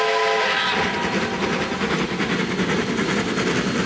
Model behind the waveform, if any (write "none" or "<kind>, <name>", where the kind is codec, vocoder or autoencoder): none